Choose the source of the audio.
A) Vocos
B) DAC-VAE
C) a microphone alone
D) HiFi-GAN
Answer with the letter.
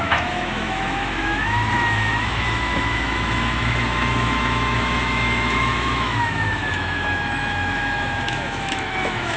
B